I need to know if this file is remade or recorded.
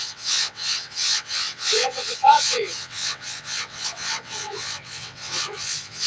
remade